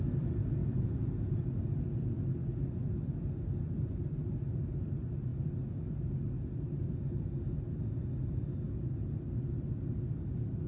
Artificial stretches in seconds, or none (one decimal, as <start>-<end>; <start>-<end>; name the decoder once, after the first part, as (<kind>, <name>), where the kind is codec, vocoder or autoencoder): 0.6-1.3 (vocoder, Vocos)